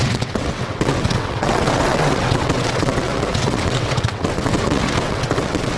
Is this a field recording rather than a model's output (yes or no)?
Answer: no